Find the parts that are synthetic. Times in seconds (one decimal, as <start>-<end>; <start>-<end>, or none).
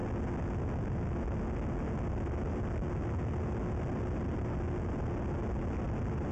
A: none